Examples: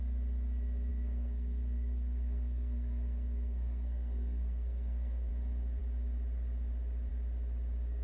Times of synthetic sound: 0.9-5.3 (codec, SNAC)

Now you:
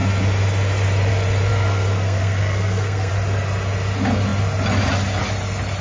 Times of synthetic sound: 1.5-3.1 (codec, SNAC)

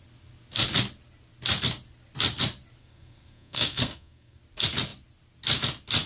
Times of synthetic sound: 2.8-4.4 (codec, SNAC)

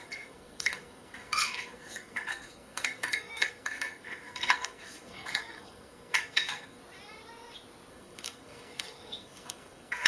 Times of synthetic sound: 0.0-6.8 (codec, SNAC); 7.9-10.1

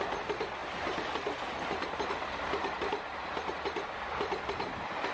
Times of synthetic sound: none

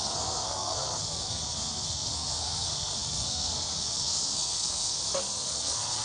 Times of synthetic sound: 0.0-6.0 (codec, SNAC)